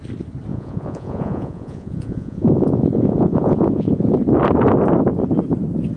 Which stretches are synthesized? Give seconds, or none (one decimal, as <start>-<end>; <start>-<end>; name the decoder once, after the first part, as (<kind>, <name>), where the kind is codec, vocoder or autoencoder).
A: 0.5-4.1 (vocoder, Vocos)